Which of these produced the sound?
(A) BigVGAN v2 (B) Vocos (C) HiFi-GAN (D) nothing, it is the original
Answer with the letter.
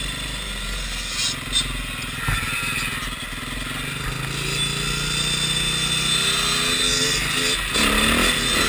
D